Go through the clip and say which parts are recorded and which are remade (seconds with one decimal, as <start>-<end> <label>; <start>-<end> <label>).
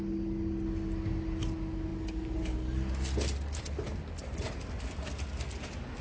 0.0-6.0 recorded